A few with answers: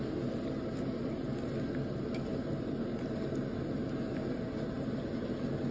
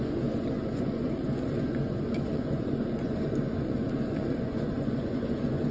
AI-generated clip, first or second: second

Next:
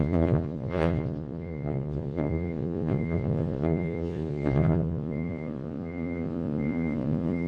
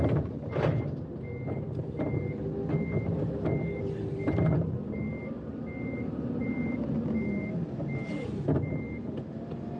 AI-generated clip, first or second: first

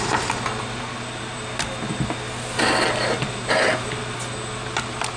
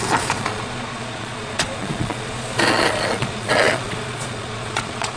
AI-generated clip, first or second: second